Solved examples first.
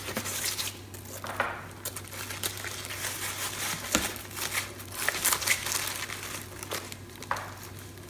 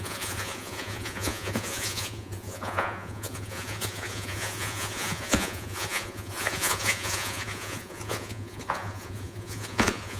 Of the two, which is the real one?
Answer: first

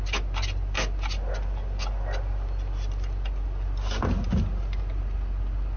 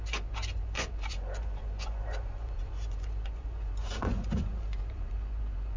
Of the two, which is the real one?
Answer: first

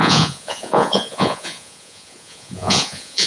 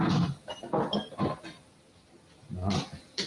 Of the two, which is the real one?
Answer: second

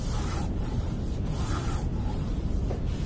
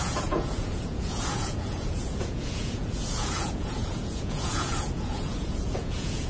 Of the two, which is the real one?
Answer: first